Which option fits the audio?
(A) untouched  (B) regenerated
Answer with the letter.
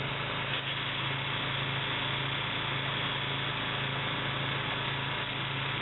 A